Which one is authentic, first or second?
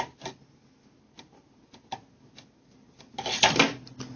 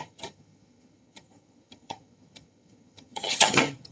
first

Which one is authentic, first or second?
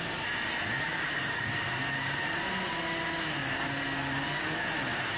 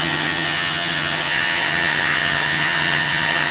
first